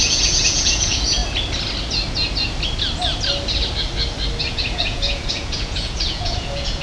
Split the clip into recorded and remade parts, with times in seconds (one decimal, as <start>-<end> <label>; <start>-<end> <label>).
0.0-1.2 remade; 1.2-4.5 recorded; 4.5-6.8 remade